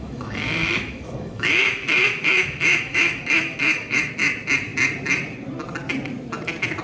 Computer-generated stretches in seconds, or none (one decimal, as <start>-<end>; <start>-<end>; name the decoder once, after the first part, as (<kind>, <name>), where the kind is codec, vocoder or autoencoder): 0.0-4.1 (autoencoder, DAC-VAE)